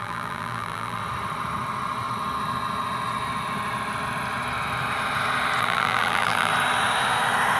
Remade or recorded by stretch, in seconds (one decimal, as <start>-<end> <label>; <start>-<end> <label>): 0.0-1.0 remade; 1.0-5.6 recorded; 5.6-6.5 remade; 6.5-7.6 recorded